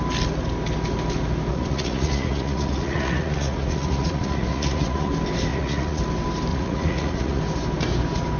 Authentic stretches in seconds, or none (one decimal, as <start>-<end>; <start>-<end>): 0.0-1.5; 5.1-5.5; 6.0-6.5; 7.4-8.4